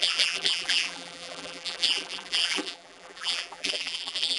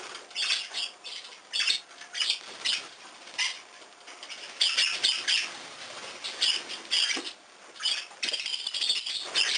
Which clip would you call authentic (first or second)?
second